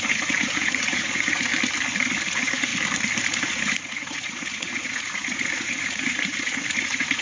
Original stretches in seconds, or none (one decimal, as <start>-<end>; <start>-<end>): 1.5-2.3; 2.7-3.2